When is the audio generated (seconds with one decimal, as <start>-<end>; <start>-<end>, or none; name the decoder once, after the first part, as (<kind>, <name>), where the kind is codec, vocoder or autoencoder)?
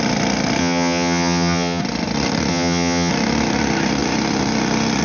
0.6-1.8 (vocoder, HiFi-GAN); 2.5-3.1